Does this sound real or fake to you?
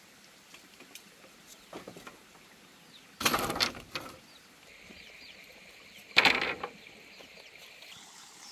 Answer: real